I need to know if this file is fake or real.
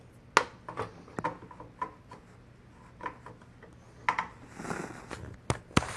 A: real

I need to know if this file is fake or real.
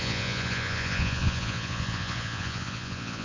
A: fake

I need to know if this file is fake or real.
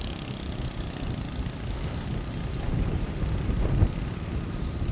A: real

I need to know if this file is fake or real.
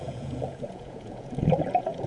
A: fake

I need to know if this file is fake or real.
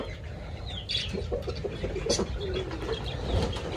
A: real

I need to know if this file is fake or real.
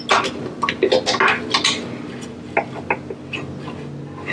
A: real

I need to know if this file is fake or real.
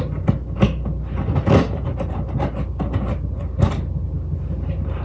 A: real